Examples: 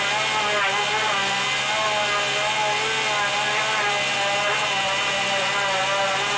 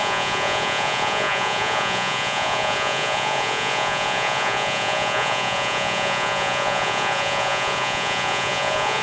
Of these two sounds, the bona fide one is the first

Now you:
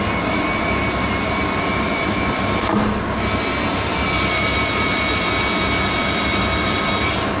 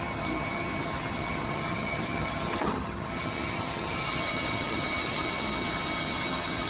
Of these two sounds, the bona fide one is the first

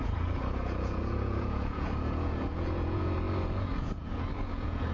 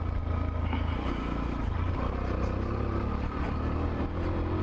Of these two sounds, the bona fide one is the second